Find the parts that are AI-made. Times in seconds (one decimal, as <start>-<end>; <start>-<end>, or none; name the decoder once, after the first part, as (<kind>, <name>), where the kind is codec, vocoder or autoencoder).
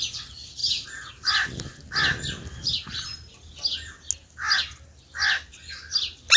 none